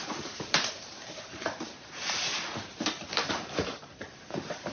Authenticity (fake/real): fake